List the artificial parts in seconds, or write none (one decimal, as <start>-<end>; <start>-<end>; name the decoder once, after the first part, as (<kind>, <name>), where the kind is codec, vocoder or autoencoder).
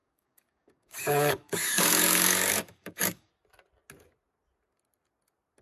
0.0-3.3 (codec, DAC)